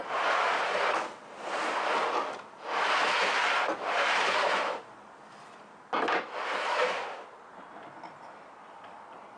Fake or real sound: real